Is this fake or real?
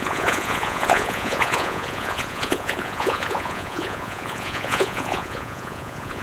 fake